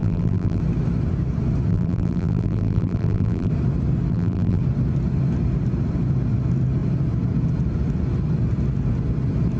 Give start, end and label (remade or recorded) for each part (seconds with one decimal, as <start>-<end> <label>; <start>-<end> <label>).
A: 0.0-0.6 remade; 0.6-1.7 recorded; 1.7-3.5 remade; 3.5-4.1 recorded; 4.1-4.6 remade; 4.6-9.6 recorded